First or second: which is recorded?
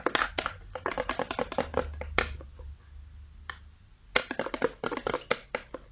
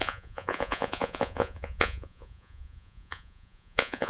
first